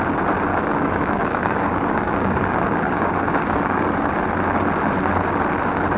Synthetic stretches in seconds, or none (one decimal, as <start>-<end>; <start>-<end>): 0.5-4.1